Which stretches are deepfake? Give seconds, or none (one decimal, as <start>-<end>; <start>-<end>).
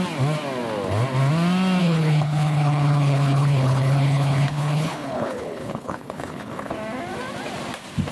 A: 1.8-6.7